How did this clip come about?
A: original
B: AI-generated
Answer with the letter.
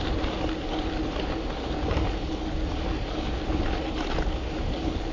A